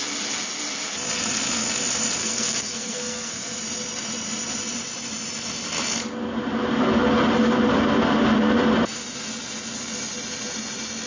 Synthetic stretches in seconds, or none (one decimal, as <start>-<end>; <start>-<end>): 2.2-3.6